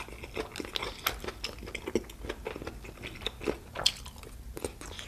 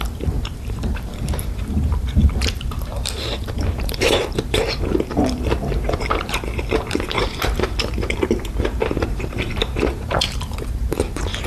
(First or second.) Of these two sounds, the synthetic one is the second